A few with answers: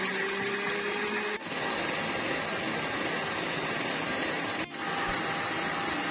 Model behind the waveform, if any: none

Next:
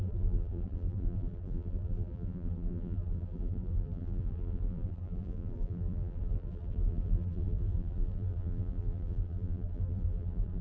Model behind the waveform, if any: vocoder, BigVGAN v2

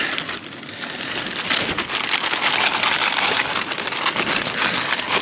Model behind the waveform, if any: none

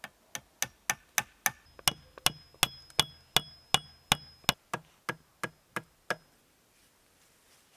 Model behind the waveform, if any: none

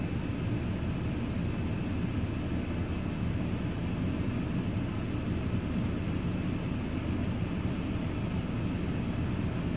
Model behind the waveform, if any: none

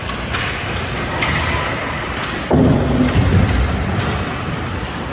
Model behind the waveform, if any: vocoder, BigVGAN v2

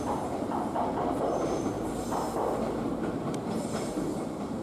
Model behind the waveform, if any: vocoder, BigVGAN v2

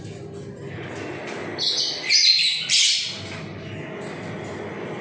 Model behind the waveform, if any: none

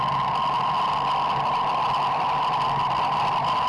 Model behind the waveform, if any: none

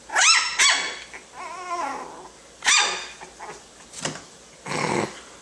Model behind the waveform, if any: none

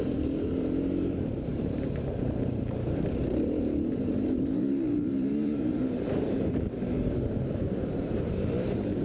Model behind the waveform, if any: vocoder, BigVGAN v2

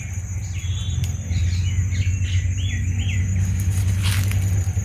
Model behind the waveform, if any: none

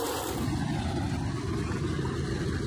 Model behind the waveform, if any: none